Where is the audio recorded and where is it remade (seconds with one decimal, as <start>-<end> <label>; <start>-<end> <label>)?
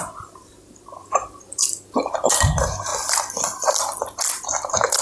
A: 0.0-2.9 remade; 2.9-4.0 recorded; 4.0-5.0 remade